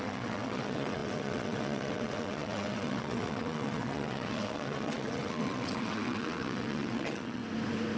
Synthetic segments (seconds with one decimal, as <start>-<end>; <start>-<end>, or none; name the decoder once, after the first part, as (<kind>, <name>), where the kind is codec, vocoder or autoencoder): 0.0-7.4 (vocoder, WaveNeXt)